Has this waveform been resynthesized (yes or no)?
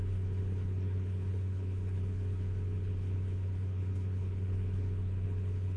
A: yes